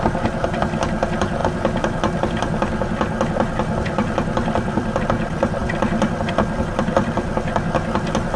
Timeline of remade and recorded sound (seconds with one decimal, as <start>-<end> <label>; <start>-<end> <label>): 0.0-8.4 recorded